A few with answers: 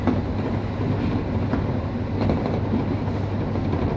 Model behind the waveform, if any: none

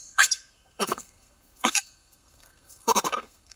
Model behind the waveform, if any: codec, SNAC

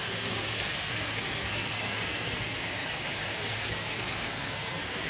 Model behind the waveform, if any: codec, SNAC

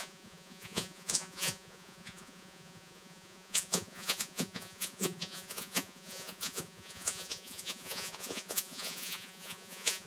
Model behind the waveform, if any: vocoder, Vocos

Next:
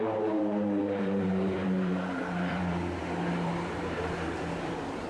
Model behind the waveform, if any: vocoder, BigVGAN v2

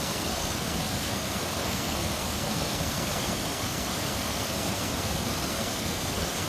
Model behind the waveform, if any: codec, SNAC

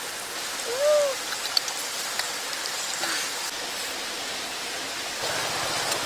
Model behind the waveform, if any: none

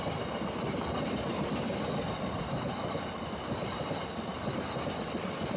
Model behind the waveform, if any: vocoder, BigVGAN v2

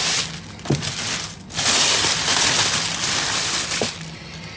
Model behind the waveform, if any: none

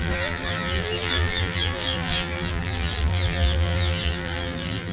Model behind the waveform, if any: vocoder, BigVGAN v2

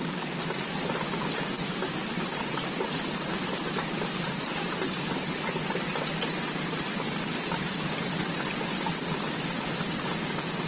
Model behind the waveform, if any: none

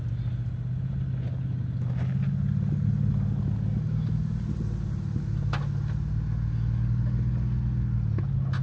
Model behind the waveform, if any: none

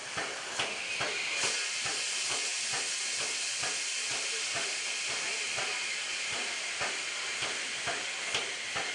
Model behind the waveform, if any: none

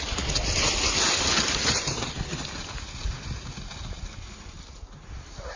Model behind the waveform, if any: none